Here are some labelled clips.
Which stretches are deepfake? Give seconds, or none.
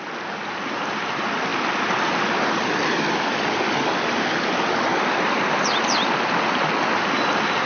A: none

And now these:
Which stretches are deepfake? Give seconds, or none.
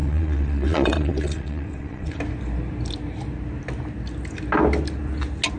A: 0.0-2.2 (vocoder, WaveNeXt)